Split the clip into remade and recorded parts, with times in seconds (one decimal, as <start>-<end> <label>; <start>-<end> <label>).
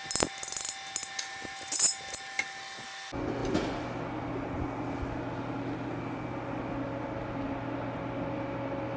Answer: 0.0-9.0 recorded